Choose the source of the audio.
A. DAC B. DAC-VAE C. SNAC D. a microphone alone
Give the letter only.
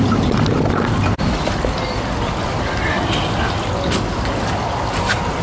D